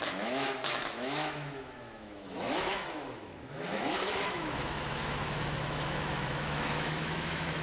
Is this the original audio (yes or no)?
no